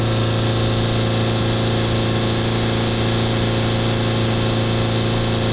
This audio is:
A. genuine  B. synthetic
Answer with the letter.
A